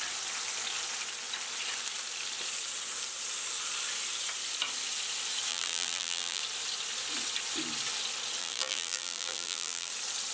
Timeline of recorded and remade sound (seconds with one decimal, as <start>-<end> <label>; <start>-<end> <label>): 0.0-5.5 recorded; 5.5-6.4 remade; 6.4-8.4 recorded; 8.4-9.9 remade; 9.9-10.3 recorded